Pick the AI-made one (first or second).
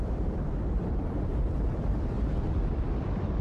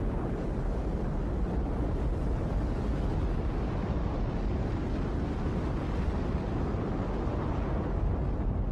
first